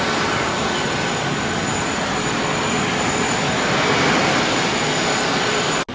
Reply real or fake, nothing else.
real